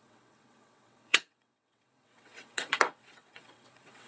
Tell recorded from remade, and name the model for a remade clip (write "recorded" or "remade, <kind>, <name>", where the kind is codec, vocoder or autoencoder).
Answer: remade, vocoder, WaveNeXt